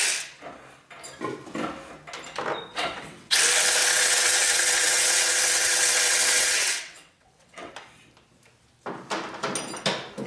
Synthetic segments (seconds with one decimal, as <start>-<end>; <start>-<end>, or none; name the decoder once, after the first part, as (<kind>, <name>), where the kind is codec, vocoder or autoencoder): 2.7-3.4 (vocoder, WaveNeXt); 3.8-7.7